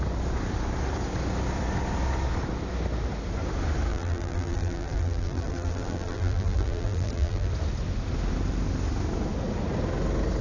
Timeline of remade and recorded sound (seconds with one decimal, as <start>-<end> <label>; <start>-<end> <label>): 0.0-3.9 recorded; 3.9-7.5 remade; 7.5-10.4 recorded